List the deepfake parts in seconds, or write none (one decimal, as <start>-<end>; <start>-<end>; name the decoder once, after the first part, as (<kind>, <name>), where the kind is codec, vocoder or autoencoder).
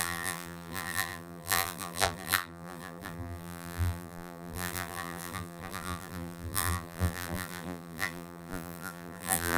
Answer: 0.0-9.6 (vocoder, BigVGAN v2)